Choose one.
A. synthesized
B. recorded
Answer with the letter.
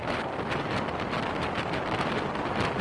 B